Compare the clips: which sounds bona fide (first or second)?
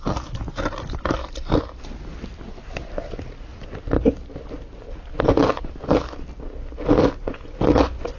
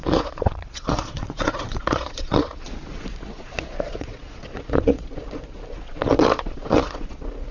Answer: first